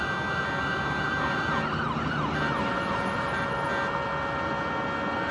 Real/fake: real